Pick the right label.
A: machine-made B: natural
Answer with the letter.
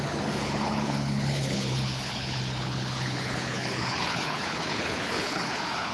A